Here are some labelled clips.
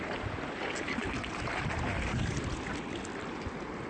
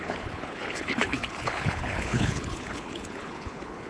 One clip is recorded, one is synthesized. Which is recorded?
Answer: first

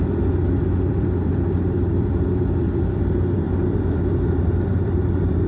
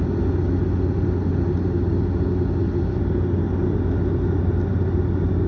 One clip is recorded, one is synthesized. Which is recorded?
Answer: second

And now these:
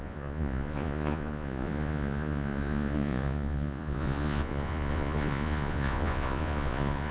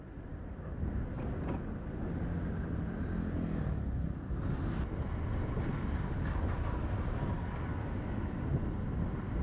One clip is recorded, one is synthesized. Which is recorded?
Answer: second